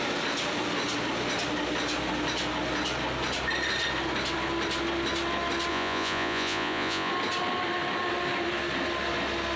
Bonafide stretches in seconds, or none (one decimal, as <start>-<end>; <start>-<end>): 0.0-5.7; 7.1-9.6